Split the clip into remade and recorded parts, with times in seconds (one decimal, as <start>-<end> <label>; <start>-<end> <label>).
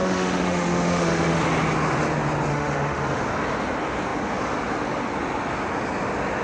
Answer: 0.0-1.4 remade; 1.4-2.5 recorded; 2.5-3.2 remade; 3.2-6.4 recorded